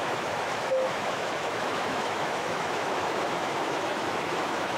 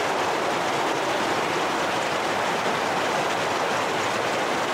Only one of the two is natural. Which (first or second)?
second